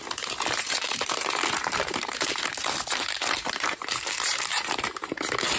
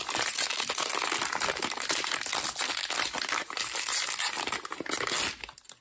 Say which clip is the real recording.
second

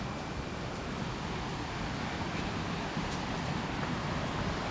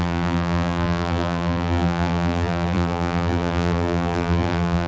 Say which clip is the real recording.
first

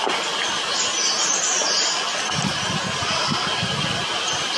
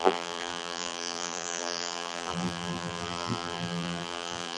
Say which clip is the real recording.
first